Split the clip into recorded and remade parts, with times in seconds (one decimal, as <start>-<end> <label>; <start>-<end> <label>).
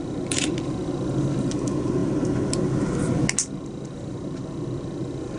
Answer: 0.0-5.4 recorded